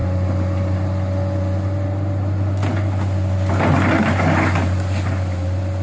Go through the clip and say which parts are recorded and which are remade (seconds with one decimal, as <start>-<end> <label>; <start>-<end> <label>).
0.0-5.8 recorded